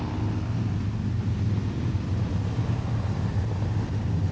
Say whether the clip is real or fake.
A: real